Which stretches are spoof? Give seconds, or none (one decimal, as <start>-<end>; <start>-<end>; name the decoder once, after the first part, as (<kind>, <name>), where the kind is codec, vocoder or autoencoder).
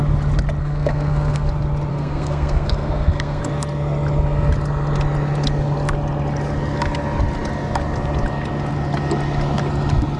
0.6-1.5 (codec, SNAC); 1.9-3.4